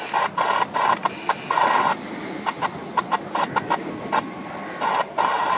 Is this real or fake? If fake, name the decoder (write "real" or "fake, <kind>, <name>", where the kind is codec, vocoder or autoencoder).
real